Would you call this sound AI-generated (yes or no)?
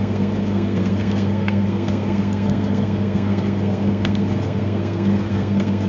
yes